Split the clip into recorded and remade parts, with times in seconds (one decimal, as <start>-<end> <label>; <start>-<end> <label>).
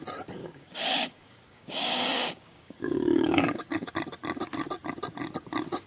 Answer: 0.0-0.4 recorded; 0.4-3.9 remade; 3.9-5.9 recorded